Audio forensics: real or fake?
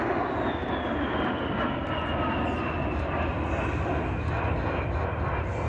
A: real